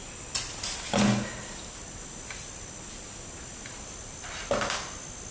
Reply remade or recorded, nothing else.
recorded